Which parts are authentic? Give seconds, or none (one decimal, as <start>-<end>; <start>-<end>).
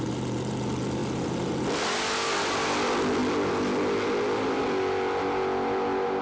0.0-6.2